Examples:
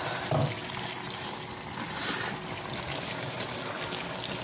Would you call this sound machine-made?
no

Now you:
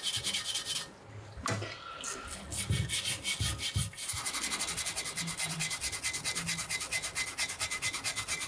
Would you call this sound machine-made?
no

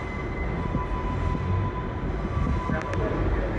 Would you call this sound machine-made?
no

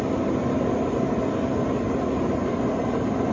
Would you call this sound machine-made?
no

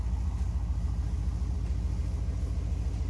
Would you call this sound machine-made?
no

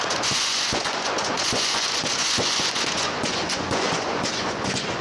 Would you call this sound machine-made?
yes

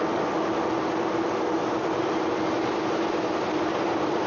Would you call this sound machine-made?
no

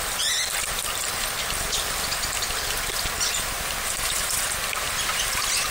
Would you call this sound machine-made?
no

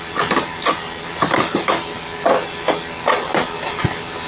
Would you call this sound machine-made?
no